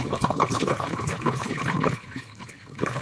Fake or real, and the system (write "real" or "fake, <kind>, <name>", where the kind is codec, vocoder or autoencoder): fake, codec, HILCodec